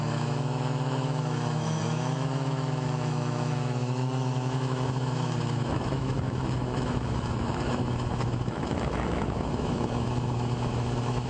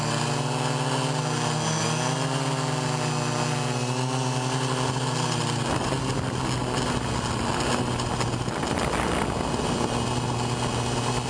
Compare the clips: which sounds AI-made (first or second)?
first